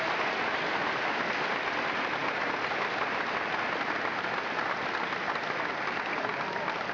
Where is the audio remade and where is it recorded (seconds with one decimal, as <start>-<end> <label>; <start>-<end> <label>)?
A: 0.0-6.9 recorded